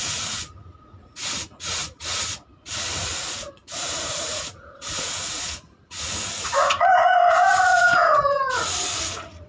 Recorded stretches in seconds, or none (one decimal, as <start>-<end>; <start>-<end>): 6.9-7.5